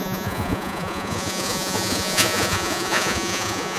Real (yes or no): no